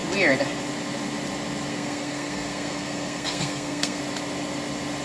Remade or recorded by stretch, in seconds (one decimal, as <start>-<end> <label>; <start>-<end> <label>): 0.0-1.7 recorded; 1.7-4.0 remade; 4.0-5.0 recorded